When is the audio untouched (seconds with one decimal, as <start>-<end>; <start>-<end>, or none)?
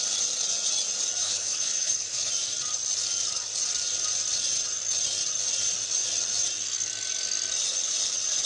0.0-1.2; 2.3-8.5